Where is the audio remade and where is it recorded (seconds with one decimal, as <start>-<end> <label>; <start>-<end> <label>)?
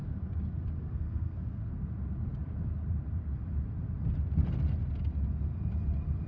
0.0-0.8 recorded; 0.8-1.8 remade; 1.8-6.3 recorded